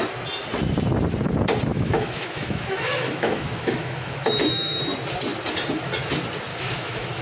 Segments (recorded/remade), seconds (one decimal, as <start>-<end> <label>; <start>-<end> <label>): 0.0-1.7 recorded; 1.7-4.8 remade; 4.8-6.5 recorded; 6.5-7.2 remade